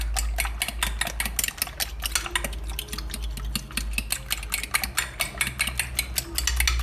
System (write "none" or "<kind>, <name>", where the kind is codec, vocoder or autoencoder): none